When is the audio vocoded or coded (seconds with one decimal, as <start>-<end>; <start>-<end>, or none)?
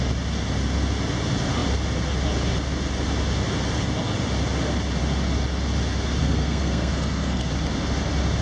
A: 6.2-7.5